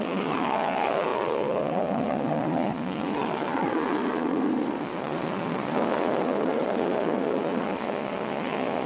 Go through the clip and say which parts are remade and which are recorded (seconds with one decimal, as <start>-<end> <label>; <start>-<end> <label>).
0.0-8.9 remade